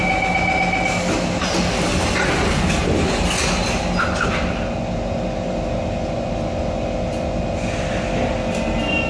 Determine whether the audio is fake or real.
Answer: real